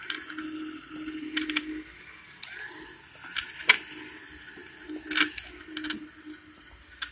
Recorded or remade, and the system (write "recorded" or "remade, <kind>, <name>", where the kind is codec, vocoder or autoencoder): recorded